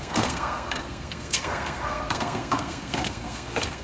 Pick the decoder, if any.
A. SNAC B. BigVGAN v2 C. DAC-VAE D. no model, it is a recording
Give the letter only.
A